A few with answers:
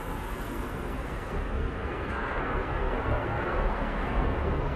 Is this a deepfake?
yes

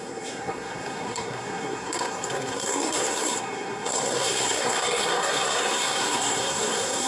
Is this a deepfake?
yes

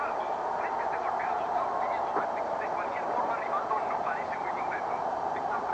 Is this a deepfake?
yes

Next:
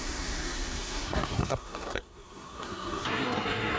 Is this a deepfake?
yes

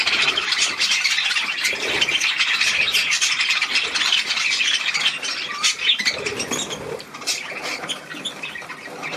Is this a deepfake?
yes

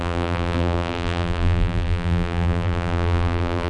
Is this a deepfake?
yes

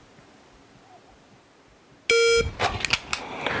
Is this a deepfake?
no